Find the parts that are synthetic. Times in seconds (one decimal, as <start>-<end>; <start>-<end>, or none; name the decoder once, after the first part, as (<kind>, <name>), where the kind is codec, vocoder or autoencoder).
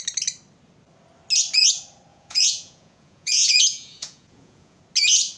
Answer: 2.1-4.8 (vocoder, Vocos)